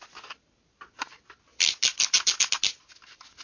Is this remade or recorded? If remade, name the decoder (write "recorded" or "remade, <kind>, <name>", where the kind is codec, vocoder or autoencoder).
recorded